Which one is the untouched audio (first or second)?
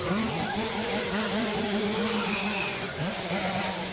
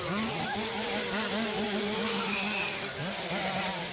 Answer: second